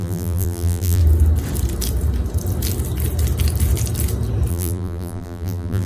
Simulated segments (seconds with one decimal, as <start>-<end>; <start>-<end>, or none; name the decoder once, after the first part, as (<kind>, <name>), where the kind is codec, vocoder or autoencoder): 0.0-1.0 (vocoder, BigVGAN v2); 4.5-5.9